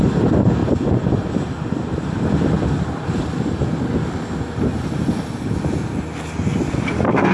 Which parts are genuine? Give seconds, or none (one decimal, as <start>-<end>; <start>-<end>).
0.0-7.3